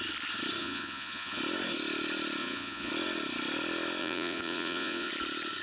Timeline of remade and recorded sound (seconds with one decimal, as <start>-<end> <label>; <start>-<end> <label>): 0.0-0.6 recorded; 0.6-1.4 remade; 1.4-2.4 recorded; 2.4-2.9 remade; 2.9-4.0 recorded; 4.0-5.1 remade; 5.1-5.6 recorded